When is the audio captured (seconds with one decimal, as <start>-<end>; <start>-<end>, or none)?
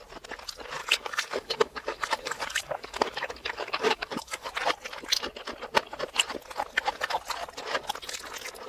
0.0-0.8; 4.5-8.7